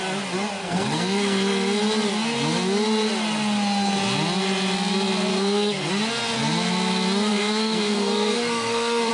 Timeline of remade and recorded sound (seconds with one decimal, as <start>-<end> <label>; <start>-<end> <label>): 0.0-0.6 recorded; 0.6-1.8 remade; 1.8-5.3 recorded; 5.3-5.9 remade; 5.9-7.3 recorded; 7.3-9.1 remade